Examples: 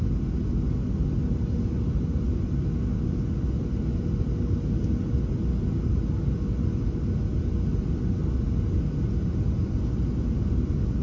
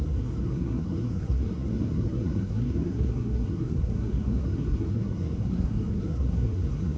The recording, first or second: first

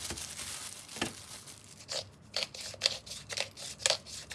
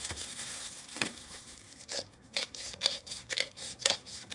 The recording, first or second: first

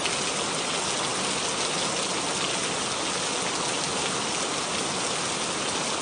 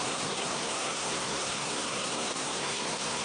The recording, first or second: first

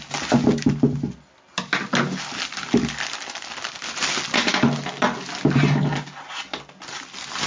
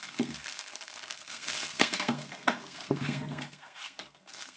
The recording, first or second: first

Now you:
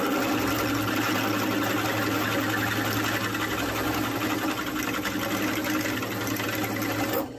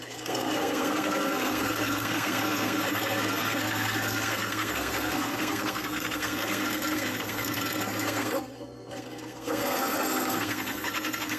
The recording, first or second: first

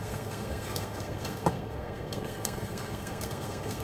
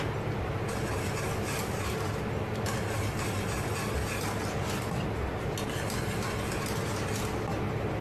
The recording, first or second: second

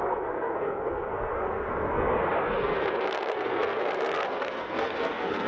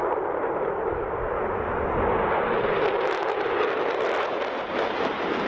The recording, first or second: second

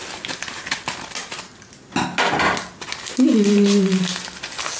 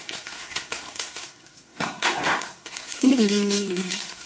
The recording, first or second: first